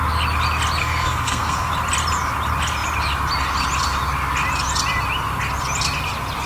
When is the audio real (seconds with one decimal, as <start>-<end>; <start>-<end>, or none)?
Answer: 0.0-0.8; 1.7-6.5